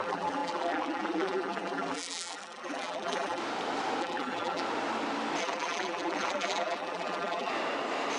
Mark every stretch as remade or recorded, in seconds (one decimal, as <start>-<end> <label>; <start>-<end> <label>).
0.0-3.4 remade; 3.4-4.0 recorded; 4.0-4.6 remade; 4.6-5.4 recorded; 5.4-7.5 remade; 7.5-8.2 recorded